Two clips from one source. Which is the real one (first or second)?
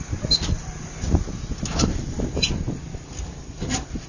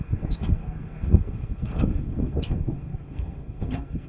first